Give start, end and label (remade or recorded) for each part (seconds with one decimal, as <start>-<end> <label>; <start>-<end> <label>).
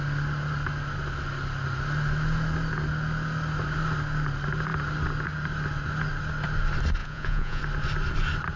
0.0-7.0 recorded; 7.0-7.6 remade; 7.6-8.6 recorded